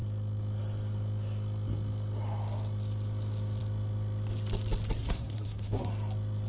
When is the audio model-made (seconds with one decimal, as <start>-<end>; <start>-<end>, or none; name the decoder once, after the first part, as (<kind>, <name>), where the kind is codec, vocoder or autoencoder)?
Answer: 5.0-5.9 (codec, SNAC)